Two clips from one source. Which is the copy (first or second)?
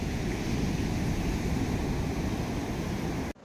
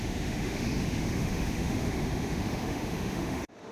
second